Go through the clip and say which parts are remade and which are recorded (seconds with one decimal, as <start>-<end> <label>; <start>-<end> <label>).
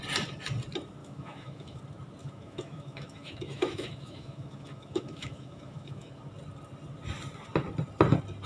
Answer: 0.0-1.0 recorded; 1.0-1.8 remade; 1.8-2.2 recorded; 2.2-6.2 remade; 6.2-8.5 recorded